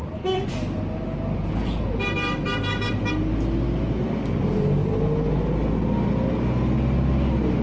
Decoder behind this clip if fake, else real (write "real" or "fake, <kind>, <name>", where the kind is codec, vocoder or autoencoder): real